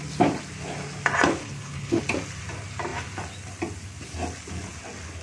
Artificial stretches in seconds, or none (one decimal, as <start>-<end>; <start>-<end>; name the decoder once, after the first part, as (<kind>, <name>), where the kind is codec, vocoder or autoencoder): 1.4-2.0 (codec, HILCodec)